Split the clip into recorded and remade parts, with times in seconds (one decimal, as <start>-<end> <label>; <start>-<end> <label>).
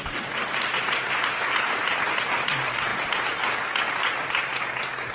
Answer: 0.0-1.9 remade; 1.9-2.5 recorded; 2.5-2.9 remade; 2.9-3.9 recorded; 3.9-5.1 remade